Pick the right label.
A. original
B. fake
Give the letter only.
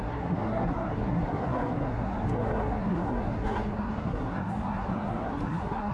B